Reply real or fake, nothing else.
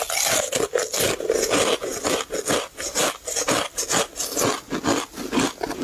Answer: real